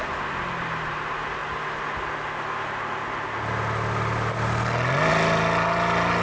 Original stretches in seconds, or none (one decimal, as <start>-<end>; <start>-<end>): 0.0-6.2